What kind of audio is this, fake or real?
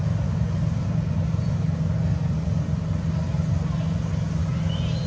real